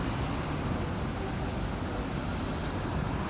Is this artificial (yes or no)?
no